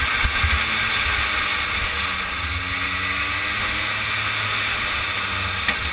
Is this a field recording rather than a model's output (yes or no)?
yes